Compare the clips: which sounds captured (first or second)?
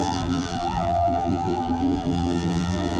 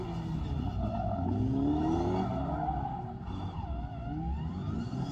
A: second